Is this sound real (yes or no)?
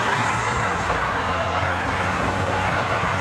no